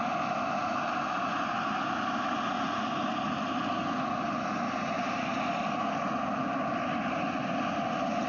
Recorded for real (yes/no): yes